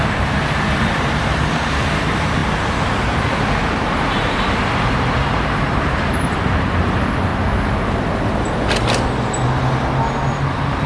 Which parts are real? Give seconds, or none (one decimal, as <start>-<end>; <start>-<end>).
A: 7.3-10.5